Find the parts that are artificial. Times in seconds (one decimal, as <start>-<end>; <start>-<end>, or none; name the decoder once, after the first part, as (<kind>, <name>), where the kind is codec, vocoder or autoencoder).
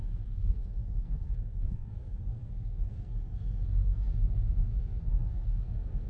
0.0-6.1 (codec, SNAC)